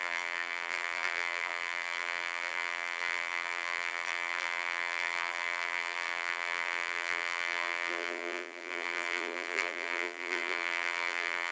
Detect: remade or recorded remade